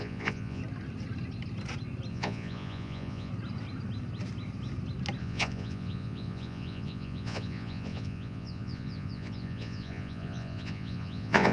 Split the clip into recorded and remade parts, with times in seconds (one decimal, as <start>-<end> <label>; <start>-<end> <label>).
0.0-0.6 remade; 0.6-2.1 recorded; 2.1-3.3 remade; 3.3-5.2 recorded; 5.2-11.5 remade